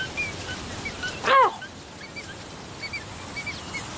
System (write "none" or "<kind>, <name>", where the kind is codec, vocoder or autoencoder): none